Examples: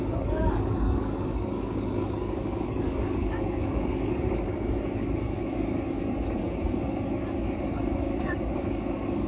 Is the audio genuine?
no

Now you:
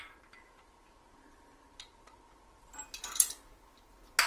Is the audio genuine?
yes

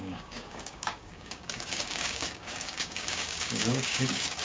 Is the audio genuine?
no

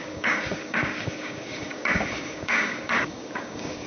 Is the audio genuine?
no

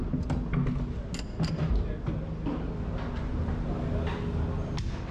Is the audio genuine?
yes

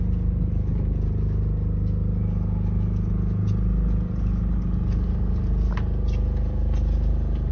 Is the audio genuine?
yes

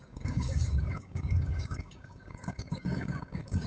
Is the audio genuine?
no